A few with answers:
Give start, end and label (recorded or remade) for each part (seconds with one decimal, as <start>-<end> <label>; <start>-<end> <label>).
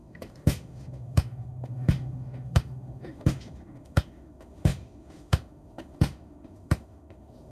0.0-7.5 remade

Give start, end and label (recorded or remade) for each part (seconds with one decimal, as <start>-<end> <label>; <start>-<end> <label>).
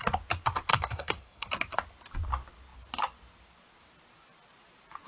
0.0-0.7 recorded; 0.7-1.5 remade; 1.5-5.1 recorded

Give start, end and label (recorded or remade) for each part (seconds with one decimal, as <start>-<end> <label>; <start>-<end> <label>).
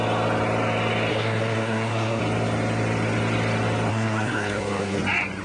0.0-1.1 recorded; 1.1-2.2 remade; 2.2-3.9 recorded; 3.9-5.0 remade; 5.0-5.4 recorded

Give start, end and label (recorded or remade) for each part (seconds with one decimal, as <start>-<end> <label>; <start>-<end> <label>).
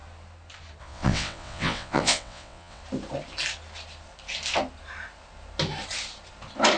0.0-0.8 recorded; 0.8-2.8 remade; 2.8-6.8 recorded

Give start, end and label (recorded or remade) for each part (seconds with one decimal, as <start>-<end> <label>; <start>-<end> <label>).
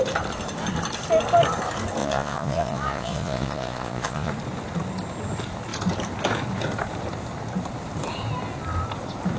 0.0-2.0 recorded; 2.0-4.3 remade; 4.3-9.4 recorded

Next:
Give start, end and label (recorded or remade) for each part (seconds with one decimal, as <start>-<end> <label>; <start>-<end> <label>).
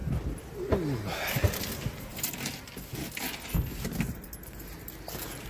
0.0-5.5 recorded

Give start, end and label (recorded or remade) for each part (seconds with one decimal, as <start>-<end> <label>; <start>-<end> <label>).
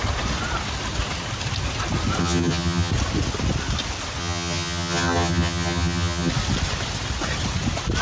0.0-2.2 recorded; 2.2-2.9 remade; 2.9-4.2 recorded; 4.2-6.3 remade; 6.3-8.0 recorded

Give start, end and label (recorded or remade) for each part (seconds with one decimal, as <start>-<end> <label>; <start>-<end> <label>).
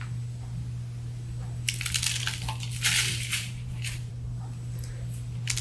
0.0-3.1 recorded; 3.1-4.1 remade; 4.1-5.6 recorded